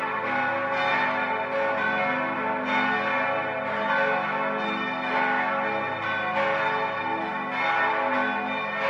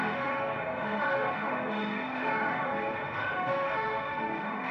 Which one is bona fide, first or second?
first